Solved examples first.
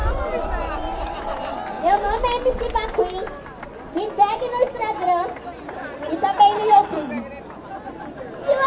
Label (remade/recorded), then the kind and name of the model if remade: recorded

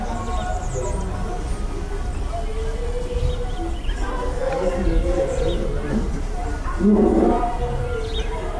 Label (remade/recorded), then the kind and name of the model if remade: recorded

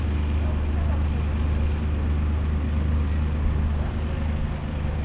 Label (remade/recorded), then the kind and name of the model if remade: recorded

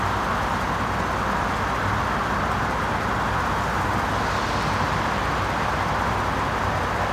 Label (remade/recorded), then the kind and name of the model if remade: recorded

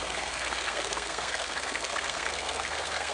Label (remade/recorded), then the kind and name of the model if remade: remade, codec, SNAC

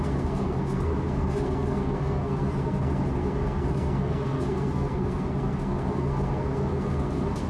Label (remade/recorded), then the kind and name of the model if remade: remade, codec, SNAC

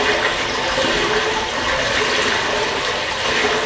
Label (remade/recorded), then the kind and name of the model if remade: recorded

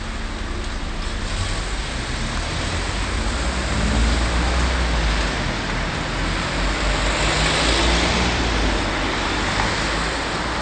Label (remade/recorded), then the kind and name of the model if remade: recorded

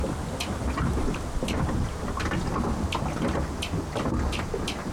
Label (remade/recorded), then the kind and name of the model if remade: recorded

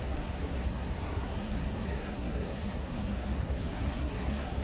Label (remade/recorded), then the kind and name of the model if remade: remade, codec, SNAC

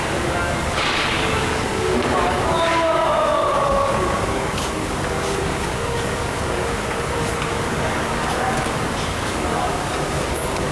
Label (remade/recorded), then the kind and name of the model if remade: remade, codec, DAC